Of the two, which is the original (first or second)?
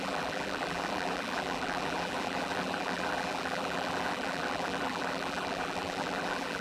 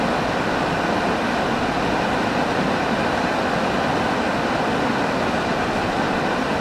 second